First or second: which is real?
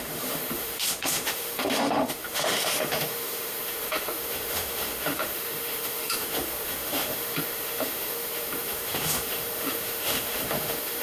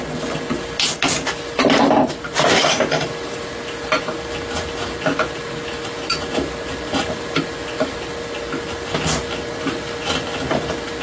second